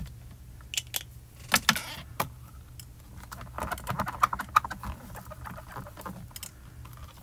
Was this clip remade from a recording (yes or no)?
no